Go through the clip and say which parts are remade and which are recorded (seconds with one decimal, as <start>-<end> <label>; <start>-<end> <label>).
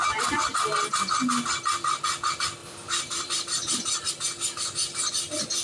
0.0-2.6 recorded; 2.6-4.1 remade; 4.1-5.6 recorded